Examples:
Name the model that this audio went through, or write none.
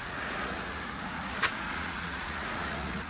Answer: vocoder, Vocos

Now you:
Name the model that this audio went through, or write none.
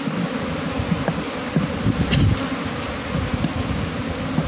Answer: none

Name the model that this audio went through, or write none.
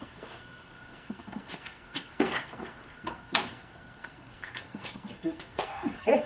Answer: codec, SNAC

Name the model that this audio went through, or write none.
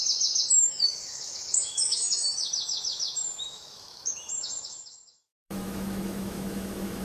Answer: autoencoder, DAC-VAE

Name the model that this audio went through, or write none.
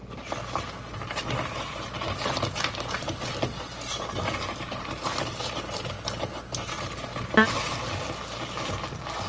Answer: none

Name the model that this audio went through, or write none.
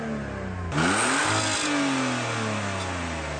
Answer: none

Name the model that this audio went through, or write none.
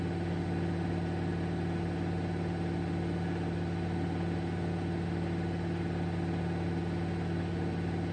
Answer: none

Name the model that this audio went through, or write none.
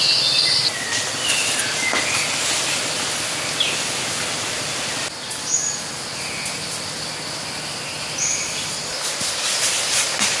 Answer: none